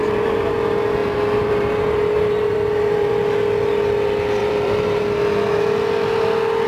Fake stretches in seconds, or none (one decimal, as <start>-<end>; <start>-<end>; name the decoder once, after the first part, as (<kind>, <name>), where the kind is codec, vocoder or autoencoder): 0.0-0.5 (vocoder, BigVGAN v2); 1.0-3.1; 4.4-5.0